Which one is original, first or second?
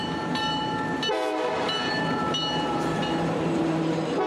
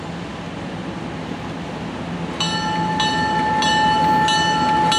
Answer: second